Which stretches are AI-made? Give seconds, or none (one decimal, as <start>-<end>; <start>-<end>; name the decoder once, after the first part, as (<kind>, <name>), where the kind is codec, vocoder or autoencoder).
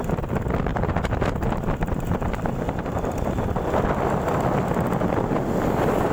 0.7-2.8 (vocoder, BigVGAN v2)